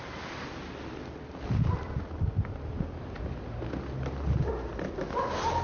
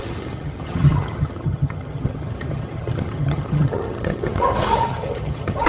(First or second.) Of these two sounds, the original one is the first